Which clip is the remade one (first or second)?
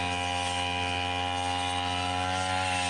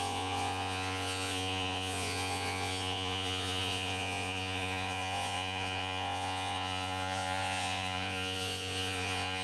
second